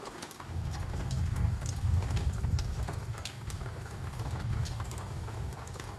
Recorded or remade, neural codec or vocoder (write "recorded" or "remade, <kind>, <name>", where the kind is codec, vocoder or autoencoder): remade, codec, DAC